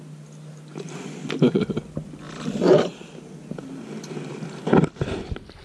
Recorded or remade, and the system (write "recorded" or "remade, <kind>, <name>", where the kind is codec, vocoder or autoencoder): recorded